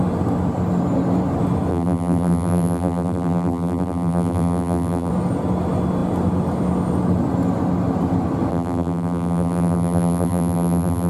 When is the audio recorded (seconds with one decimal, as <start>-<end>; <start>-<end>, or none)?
0.0-1.7; 5.1-8.5